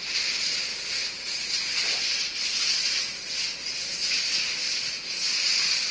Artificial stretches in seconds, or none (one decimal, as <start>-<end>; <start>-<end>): none